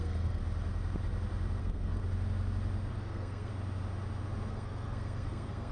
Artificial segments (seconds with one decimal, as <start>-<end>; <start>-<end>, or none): 0.0-0.4; 1.6-2.0; 2.9-3.5; 4.5-5.7